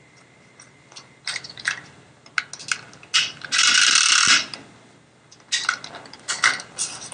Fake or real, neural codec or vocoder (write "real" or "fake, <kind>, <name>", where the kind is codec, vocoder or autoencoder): real